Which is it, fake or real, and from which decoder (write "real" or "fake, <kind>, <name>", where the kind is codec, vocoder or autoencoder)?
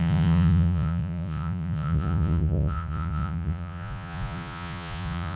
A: fake, vocoder, Vocos